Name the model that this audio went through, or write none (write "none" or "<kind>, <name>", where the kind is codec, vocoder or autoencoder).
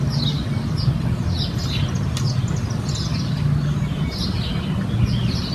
none